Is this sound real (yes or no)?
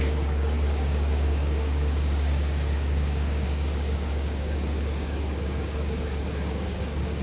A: no